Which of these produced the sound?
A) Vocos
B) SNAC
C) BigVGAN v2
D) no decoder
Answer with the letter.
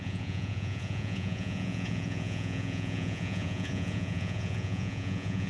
A